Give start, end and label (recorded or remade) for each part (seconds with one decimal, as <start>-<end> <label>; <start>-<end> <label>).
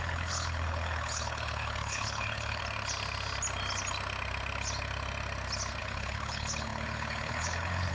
0.0-2.6 remade; 2.6-5.8 recorded; 5.8-7.9 remade